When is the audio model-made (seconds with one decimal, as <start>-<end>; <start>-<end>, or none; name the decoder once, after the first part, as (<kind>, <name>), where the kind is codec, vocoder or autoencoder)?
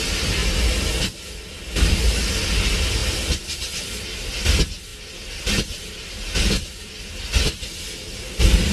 none